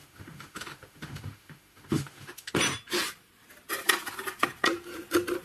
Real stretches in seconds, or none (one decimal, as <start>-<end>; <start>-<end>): 2.5-5.4